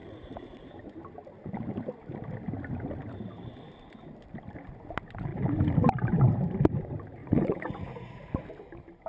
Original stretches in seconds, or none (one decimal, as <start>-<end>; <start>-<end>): 0.7-7.2; 8.3-9.1